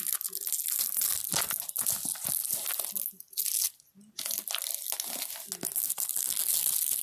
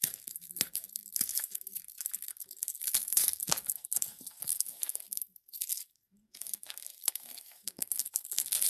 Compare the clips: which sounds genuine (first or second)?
first